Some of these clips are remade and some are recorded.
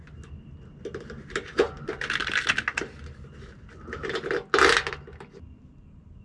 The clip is recorded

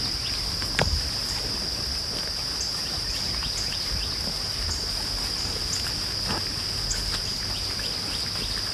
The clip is recorded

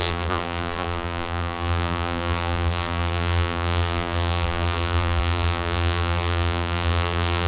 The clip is remade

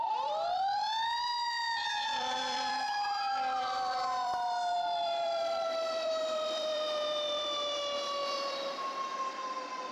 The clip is remade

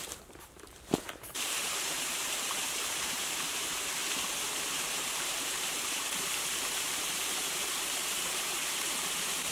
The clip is remade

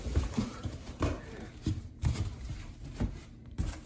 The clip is remade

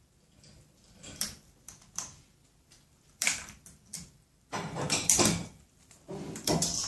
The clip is remade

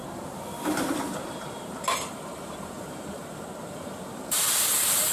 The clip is remade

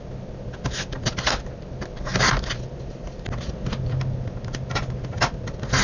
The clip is recorded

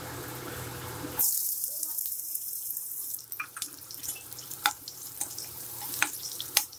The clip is remade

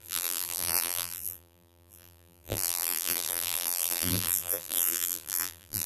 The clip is remade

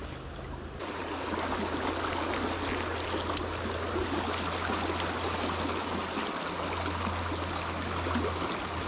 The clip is recorded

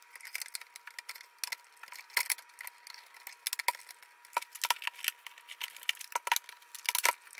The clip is recorded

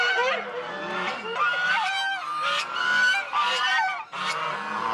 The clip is recorded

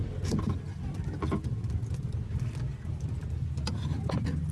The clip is recorded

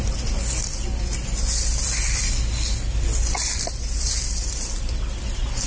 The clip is recorded